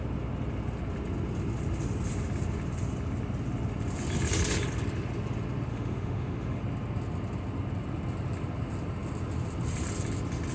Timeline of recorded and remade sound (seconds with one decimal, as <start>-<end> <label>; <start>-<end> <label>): 0.0-5.7 recorded; 5.7-6.6 remade; 6.6-10.5 recorded